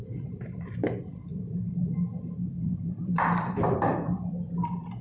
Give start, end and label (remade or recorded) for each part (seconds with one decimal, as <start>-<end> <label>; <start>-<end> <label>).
0.0-0.7 remade; 0.7-1.3 recorded; 1.3-4.3 remade; 4.3-5.0 recorded